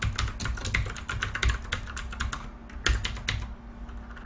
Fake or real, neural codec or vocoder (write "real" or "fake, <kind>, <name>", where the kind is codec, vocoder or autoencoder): real